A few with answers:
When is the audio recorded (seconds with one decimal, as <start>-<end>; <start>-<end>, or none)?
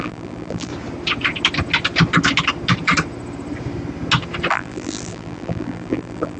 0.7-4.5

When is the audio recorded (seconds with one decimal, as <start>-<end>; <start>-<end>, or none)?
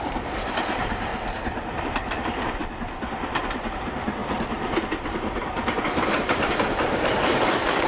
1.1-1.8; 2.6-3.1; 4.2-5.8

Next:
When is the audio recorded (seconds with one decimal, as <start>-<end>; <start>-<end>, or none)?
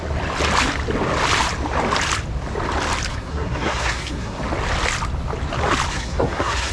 0.0-3.1; 4.4-5.9